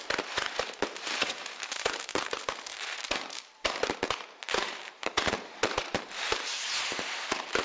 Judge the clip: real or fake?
fake